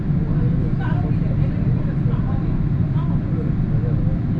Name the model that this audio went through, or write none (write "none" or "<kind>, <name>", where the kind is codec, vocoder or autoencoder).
none